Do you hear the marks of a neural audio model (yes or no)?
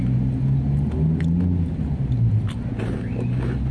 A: no